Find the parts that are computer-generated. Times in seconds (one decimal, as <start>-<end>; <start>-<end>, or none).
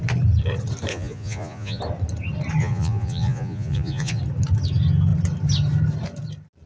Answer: 0.9-1.8; 2.6-4.2